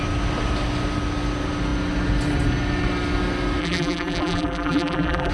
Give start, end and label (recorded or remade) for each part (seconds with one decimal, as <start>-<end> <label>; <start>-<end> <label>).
0.0-3.6 recorded; 3.6-5.3 remade